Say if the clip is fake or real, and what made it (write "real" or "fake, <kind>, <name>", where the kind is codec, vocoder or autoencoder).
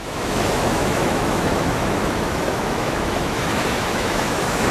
fake, autoencoder, DAC-VAE